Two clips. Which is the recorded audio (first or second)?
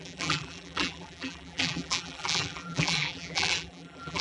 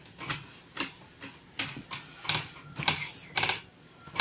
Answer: second